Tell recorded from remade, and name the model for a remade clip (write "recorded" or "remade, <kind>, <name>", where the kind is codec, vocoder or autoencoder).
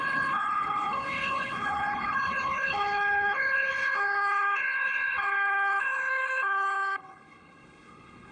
remade, codec, HILCodec